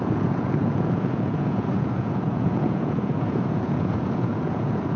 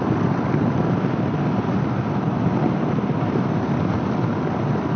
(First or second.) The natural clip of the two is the second